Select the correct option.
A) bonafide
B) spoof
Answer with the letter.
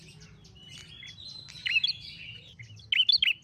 A